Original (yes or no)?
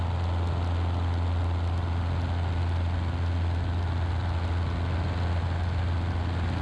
yes